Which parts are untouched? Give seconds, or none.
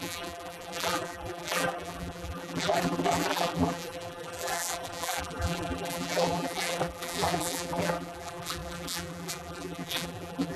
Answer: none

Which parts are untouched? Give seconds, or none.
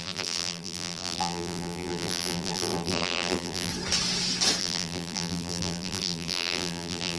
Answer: 3.7-4.6